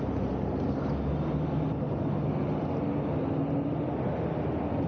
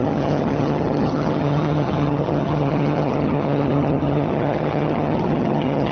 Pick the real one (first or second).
first